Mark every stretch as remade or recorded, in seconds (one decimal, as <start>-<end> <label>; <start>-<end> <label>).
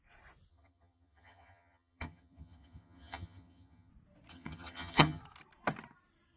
0.0-0.5 recorded; 0.5-3.9 remade; 3.9-4.3 recorded; 4.3-5.2 remade; 5.2-6.4 recorded